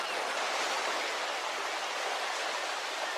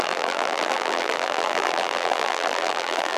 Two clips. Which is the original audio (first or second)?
first